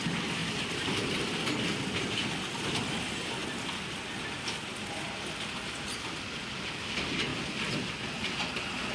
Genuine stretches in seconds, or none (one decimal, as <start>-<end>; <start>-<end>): 0.0-8.9